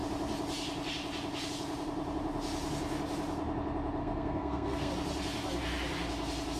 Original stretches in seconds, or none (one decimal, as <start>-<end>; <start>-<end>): 0.0-4.0; 4.9-6.6